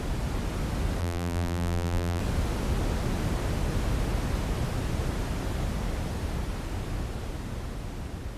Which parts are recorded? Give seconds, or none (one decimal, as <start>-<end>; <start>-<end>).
0.0-1.0; 2.2-8.4